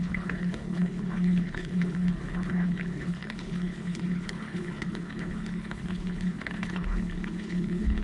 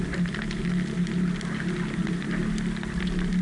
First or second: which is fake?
first